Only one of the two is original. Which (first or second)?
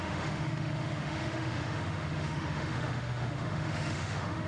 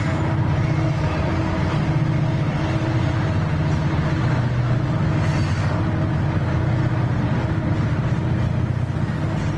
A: second